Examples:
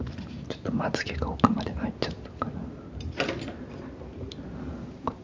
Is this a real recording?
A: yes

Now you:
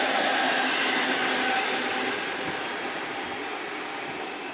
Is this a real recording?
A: yes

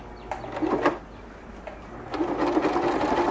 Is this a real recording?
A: yes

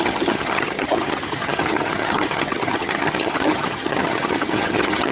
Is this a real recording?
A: no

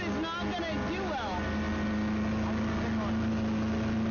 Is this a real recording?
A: yes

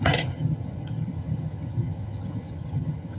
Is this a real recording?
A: no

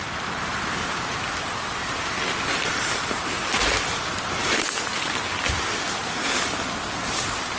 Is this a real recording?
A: yes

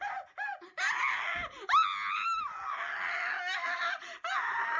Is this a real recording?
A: yes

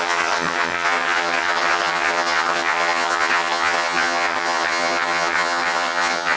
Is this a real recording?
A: no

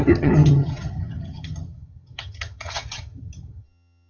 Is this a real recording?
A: no